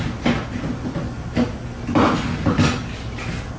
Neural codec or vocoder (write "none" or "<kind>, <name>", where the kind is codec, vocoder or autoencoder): none